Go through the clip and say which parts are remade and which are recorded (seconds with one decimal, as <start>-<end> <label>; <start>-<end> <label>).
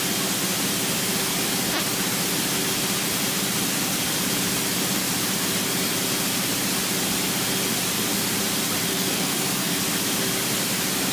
0.0-8.9 recorded; 8.9-9.8 remade; 9.8-11.1 recorded